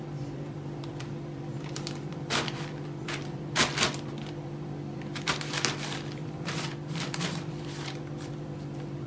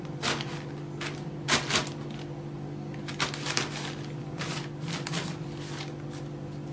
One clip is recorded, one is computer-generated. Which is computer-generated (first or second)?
first